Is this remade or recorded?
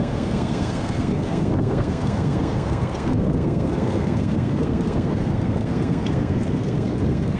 remade